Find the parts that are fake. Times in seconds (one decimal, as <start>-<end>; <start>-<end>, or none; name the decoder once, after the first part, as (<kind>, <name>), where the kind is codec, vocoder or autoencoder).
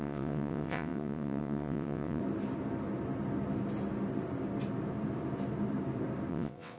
0.0-2.2 (vocoder, WaveNeXt); 6.3-6.8